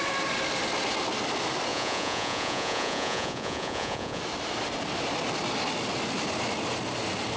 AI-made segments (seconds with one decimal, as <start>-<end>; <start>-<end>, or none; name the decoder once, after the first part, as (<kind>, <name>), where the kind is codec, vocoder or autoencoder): 1.7-4.2 (vocoder, Vocos)